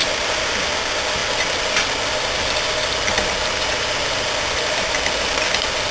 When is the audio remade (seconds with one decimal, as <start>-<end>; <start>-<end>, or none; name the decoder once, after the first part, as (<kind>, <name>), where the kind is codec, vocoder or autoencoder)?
none